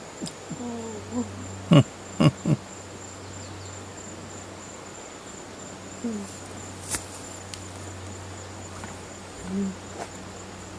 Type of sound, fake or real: real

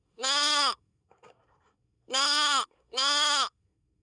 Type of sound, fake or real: fake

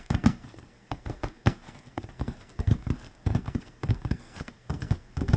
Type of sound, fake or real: fake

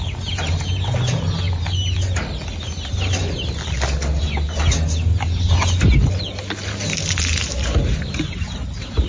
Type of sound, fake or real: real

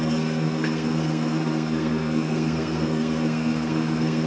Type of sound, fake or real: fake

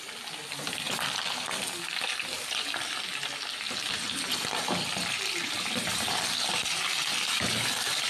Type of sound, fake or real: real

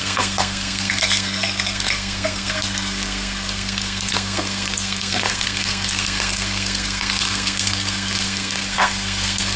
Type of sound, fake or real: fake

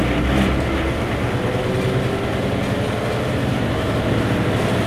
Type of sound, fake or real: real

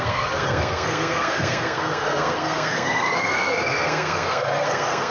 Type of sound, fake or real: fake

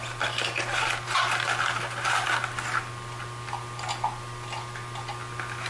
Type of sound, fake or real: real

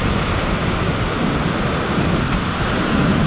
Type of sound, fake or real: real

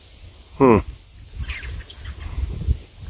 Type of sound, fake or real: real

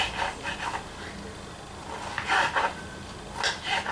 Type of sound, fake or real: real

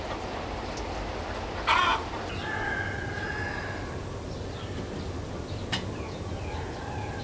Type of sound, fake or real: real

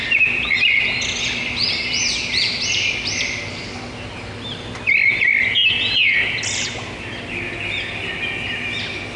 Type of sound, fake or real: real